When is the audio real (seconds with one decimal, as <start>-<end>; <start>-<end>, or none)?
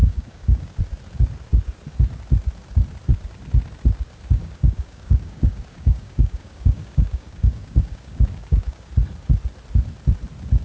0.8-4.4; 8.9-10.6